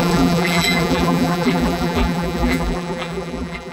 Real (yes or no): no